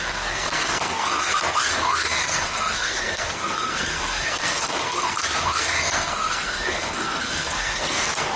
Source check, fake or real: fake